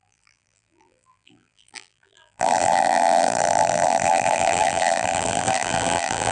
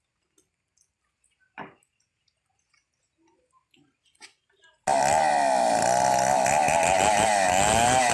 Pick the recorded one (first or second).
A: second